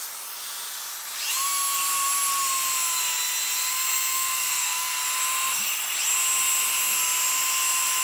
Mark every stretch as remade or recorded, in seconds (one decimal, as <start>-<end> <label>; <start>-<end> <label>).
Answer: 0.0-3.7 recorded; 3.7-5.0 remade; 5.0-8.0 recorded

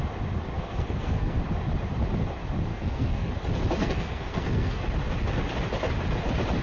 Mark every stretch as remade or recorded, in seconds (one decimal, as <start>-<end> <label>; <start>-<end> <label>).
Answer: 0.0-0.5 recorded; 0.5-1.4 remade; 1.4-2.7 recorded; 2.7-3.3 remade; 3.3-3.8 recorded; 3.8-4.8 remade; 4.8-6.6 recorded

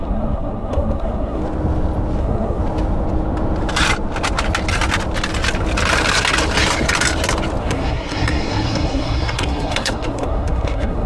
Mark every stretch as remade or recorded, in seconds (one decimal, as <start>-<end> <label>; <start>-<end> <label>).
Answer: 0.0-1.4 remade; 1.4-2.2 recorded; 2.2-2.6 remade; 2.6-7.6 recorded; 7.6-11.1 remade

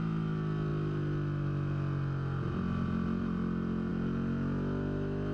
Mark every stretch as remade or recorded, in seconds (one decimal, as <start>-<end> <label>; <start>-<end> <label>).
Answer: 0.0-5.3 recorded